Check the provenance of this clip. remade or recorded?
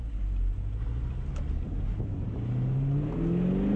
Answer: recorded